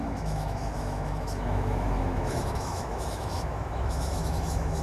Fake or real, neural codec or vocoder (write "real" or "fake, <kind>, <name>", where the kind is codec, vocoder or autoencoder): fake, autoencoder, DAC-VAE